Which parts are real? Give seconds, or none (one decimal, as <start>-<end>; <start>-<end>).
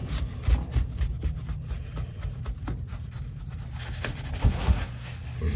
0.0-4.4; 5.1-5.6